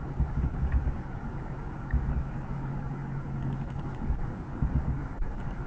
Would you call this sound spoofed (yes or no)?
yes